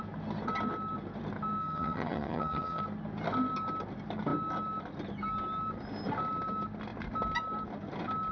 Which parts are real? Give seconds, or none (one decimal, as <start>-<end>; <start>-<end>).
0.0-1.6; 2.8-8.3